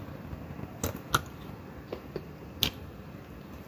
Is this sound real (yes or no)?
yes